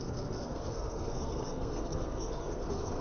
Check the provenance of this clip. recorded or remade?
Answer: remade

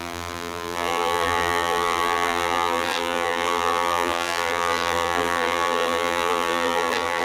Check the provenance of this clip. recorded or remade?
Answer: remade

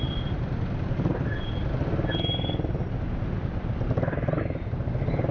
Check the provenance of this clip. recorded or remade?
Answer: recorded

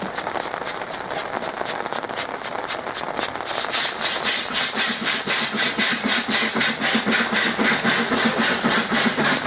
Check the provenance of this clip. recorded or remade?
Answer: recorded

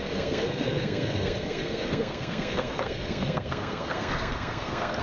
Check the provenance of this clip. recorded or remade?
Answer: remade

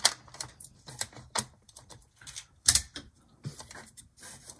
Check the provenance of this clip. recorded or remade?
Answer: remade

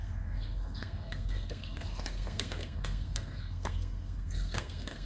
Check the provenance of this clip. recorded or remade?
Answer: remade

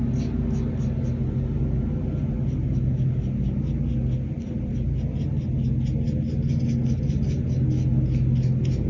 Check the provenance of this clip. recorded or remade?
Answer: recorded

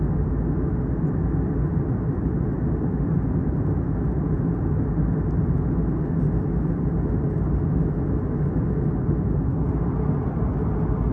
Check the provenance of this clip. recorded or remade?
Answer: recorded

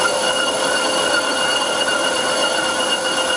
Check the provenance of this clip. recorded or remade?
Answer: remade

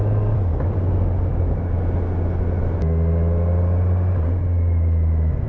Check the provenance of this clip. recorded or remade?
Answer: recorded